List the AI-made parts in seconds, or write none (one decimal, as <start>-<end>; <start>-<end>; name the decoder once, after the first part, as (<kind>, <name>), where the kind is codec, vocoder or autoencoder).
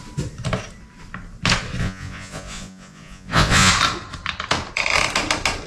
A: 1.8-3.7 (vocoder, Vocos)